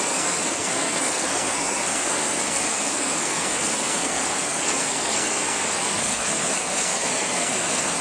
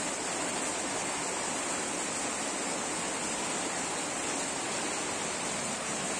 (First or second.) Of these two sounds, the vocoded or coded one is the first